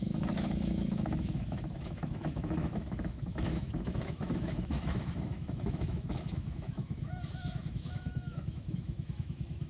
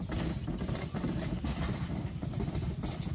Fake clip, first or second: first